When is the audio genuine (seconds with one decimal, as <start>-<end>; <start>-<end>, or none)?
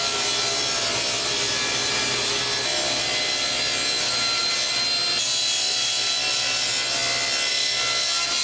0.0-1.8; 2.4-8.4